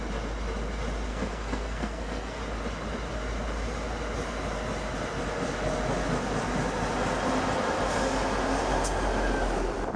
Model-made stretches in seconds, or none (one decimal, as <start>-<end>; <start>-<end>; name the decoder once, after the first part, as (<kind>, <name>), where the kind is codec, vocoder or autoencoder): 1.1-2.4 (codec, SNAC)